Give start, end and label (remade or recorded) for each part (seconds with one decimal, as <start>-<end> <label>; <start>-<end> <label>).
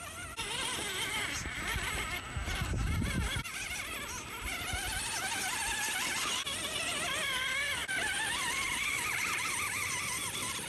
0.0-10.7 recorded